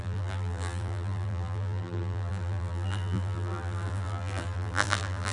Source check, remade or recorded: remade